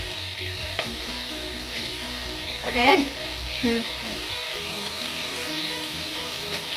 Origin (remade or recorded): remade